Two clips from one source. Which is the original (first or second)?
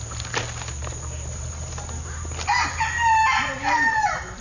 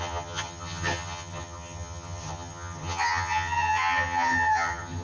first